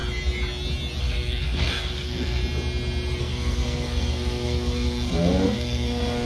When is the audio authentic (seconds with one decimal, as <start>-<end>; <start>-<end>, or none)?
0.0-1.0; 2.4-3.2